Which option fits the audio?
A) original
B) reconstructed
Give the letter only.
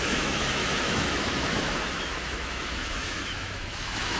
B